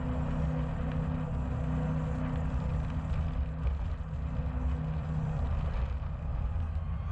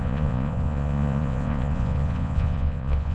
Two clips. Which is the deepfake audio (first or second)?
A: second